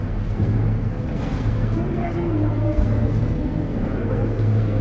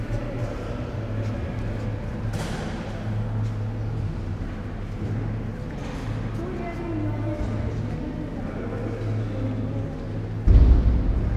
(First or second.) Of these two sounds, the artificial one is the first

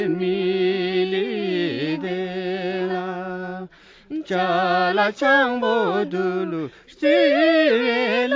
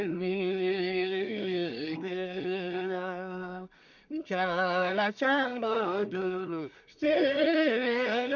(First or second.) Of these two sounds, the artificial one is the second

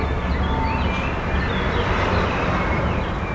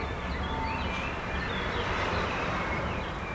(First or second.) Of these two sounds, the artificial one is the second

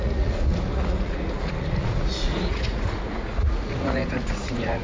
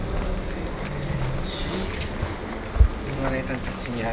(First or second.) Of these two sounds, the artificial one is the first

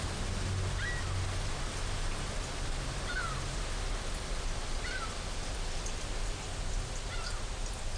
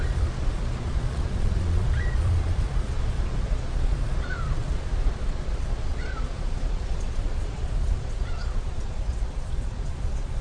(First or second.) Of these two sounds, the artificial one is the second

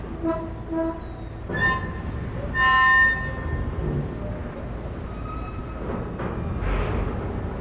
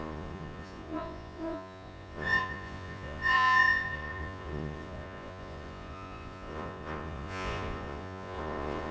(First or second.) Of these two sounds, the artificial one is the second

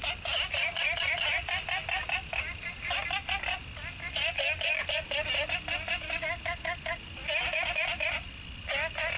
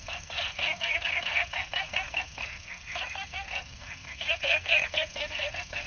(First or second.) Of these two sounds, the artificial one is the second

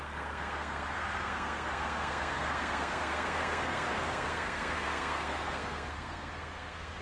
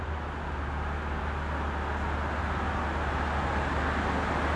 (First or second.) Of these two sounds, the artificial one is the first